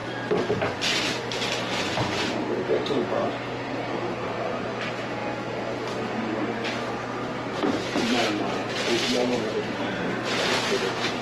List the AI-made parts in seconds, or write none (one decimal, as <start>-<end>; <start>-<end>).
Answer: 1.0-5.2; 7.4-11.2